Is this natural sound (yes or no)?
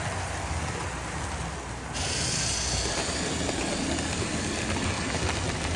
yes